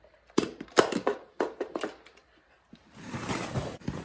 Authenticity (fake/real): fake